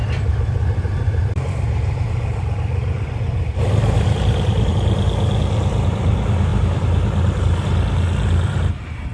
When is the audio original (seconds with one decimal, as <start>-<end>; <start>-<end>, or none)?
4.7-9.1